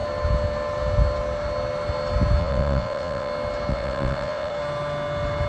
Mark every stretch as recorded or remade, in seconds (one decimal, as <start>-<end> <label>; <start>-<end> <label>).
0.0-2.4 recorded; 2.4-3.3 remade; 3.3-3.7 recorded; 3.7-4.5 remade; 4.5-5.5 recorded